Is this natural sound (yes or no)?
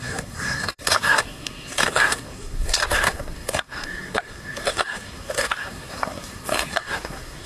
no